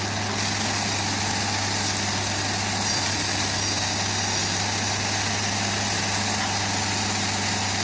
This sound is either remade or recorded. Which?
recorded